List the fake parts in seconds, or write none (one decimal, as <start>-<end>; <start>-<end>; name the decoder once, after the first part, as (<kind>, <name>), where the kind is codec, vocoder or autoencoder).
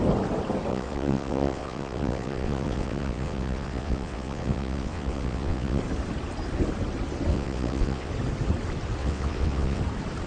0.7-5.8 (vocoder, WaveNeXt); 7.3-8.1; 9.0-9.8